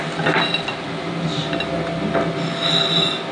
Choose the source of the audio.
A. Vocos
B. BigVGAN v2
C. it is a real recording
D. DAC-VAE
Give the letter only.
C